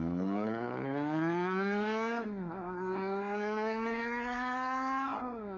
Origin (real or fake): fake